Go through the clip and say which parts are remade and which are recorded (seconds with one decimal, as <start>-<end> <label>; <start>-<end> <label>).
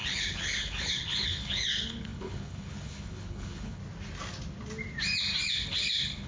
0.0-3.8 remade; 3.8-5.5 recorded; 5.5-6.3 remade